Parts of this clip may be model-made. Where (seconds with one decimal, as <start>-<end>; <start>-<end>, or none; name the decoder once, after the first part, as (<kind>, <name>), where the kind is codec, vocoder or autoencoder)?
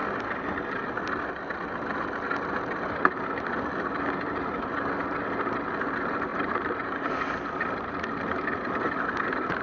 6.3-7.4 (vocoder, BigVGAN v2)